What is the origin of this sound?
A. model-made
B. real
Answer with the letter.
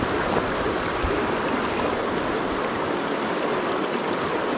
B